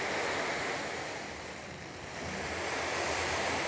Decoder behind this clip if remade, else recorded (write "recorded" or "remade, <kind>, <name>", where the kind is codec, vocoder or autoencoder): remade, vocoder, BigVGAN v2